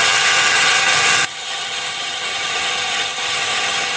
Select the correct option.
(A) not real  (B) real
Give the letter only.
A